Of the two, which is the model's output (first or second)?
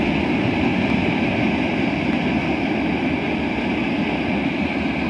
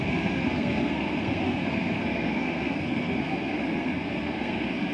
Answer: second